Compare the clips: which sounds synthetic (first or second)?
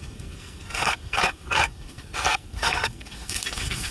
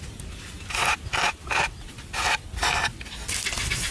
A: first